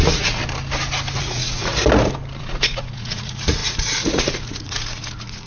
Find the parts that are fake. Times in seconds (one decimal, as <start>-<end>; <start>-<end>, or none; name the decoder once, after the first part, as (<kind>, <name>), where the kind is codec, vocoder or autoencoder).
0.0-0.4 (vocoder, Vocos); 1.2-1.7; 2.4-5.5